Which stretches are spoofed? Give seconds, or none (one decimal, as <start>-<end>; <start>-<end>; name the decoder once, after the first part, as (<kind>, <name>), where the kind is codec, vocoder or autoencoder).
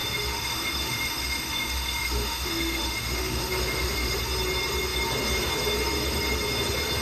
0.0-4.2 (autoencoder, DAC-VAE)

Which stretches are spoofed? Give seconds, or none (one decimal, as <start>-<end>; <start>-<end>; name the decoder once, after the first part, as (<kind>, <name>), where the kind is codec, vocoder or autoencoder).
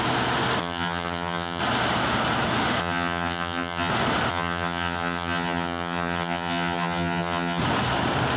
0.6-1.6 (vocoder, HiFi-GAN); 2.8-3.9; 4.3-7.6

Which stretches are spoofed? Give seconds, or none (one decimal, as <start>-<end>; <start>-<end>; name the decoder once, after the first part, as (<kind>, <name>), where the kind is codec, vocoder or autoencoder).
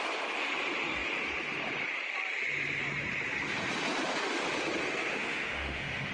5.2-6.1 (autoencoder, DAC-VAE)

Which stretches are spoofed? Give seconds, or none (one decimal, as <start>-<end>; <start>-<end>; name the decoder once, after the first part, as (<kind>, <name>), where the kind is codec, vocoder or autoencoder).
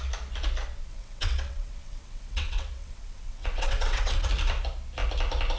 0.9-4.3 (vocoder, WaveNeXt)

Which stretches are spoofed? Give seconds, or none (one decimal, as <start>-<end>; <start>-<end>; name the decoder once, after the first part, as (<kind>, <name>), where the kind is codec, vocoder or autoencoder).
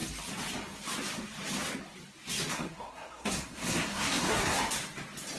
2.5-4.6 (codec, SNAC)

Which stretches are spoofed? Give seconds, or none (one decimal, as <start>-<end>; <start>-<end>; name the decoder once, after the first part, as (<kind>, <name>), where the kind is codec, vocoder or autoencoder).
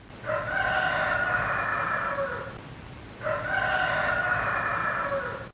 none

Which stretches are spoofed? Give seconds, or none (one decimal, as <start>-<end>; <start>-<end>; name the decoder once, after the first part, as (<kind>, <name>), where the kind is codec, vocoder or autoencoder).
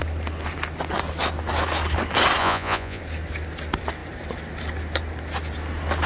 2.4-3.0 (vocoder, Vocos)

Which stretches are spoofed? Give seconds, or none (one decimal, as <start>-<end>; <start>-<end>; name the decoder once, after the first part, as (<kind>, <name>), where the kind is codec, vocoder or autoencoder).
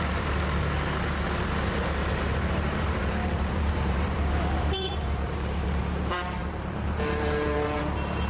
3.0-5.8 (vocoder, BigVGAN v2); 6.4-7.8